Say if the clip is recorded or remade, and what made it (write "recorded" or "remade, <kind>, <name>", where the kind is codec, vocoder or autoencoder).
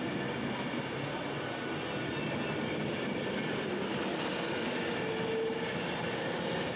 recorded